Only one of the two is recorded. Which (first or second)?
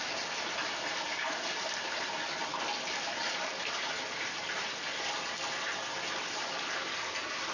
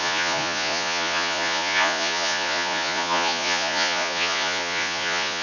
first